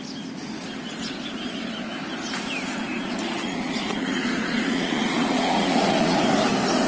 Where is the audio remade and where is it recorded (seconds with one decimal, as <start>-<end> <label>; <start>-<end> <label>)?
0.0-2.9 recorded; 2.9-6.2 remade; 6.2-6.9 recorded